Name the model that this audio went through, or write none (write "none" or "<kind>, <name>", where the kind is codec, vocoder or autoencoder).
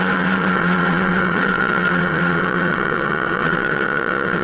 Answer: vocoder, WaveNeXt